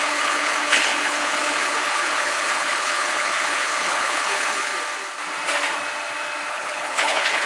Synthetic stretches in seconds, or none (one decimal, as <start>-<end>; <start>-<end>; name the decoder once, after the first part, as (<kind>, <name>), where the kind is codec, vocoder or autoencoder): 0.0-4.7 (codec, HILCodec); 6.5-7.5